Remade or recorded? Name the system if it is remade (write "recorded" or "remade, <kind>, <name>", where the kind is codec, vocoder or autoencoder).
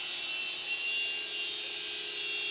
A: recorded